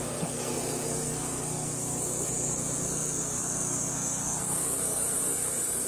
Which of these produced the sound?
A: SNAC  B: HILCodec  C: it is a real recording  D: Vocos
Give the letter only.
A